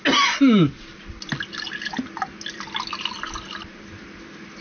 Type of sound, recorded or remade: recorded